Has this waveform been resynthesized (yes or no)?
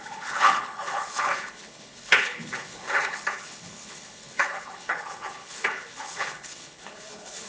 yes